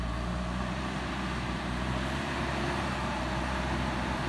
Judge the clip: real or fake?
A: fake